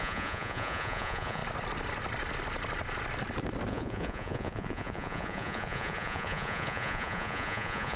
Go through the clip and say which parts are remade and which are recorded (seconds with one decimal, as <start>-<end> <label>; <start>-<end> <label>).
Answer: 0.0-1.4 remade; 1.4-3.7 recorded; 3.7-8.0 remade